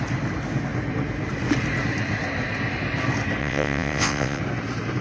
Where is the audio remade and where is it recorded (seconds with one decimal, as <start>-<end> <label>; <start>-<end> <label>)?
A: 0.0-3.4 recorded; 3.4-4.4 remade; 4.4-5.0 recorded